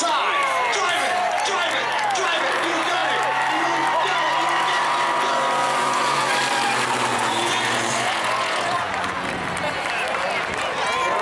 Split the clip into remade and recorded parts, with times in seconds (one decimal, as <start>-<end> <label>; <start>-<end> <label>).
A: 0.0-5.6 recorded; 5.6-6.3 remade; 6.3-7.1 recorded; 7.1-9.2 remade; 9.2-11.2 recorded